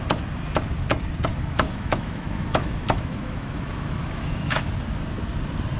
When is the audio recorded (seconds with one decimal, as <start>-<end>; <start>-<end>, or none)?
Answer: 0.0-1.3; 4.7-5.8

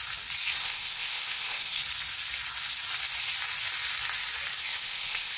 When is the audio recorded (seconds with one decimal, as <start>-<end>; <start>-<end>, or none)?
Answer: 0.0-0.6; 1.8-4.6

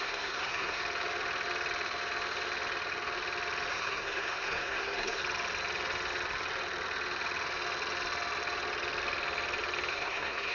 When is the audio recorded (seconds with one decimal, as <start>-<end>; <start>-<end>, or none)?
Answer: 0.8-3.7; 5.2-9.9

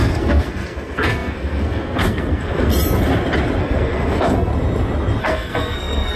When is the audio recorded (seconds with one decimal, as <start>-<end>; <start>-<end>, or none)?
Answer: 2.7-3.6; 4.5-5.2